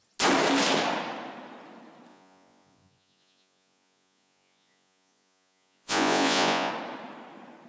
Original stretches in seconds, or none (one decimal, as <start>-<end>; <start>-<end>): 0.0-2.1; 6.7-7.7